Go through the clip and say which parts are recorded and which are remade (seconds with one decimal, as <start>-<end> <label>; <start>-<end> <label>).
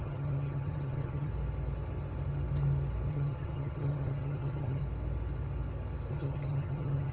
0.0-1.3 remade; 1.3-3.1 recorded; 3.1-4.8 remade; 4.8-6.1 recorded; 6.1-7.1 remade